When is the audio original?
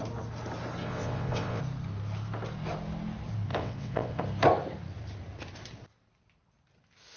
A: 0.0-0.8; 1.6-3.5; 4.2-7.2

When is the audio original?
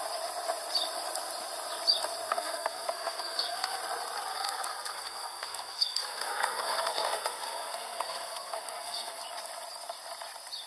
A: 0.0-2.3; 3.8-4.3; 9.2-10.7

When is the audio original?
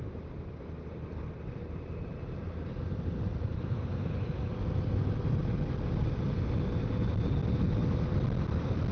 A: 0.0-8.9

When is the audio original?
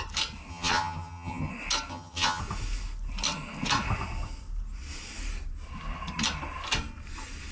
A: 0.0-0.5; 1.5-1.9; 2.4-7.5